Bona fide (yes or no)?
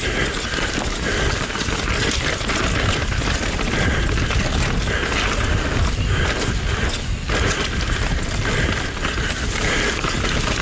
yes